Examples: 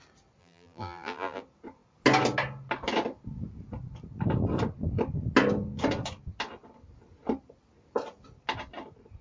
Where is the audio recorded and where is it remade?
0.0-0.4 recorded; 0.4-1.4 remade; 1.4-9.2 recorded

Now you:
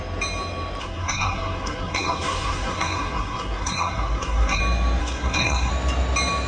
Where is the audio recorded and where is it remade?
0.0-0.8 recorded; 0.8-4.6 remade; 4.6-5.0 recorded; 5.0-5.7 remade; 5.7-6.5 recorded

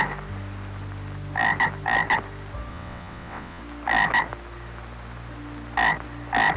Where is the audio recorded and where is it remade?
0.0-2.7 recorded; 2.7-3.6 remade; 3.6-6.6 recorded

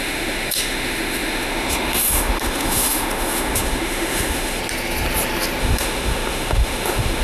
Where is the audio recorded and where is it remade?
0.0-4.6 remade; 4.6-5.6 recorded; 5.6-7.2 remade